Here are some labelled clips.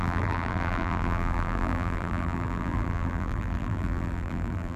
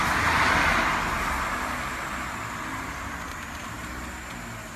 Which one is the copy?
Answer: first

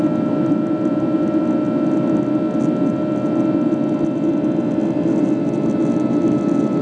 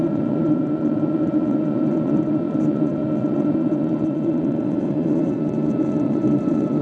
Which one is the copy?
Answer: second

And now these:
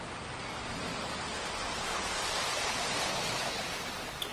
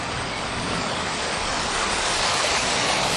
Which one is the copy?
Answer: second